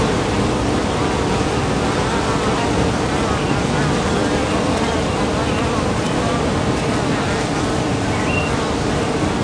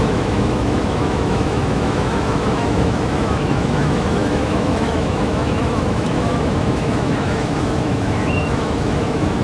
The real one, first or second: first